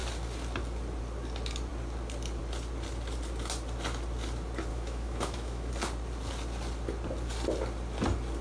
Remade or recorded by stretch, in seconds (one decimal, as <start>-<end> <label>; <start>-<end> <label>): 0.0-4.7 recorded; 4.7-5.7 remade; 5.7-8.4 recorded